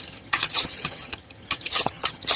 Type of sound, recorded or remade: remade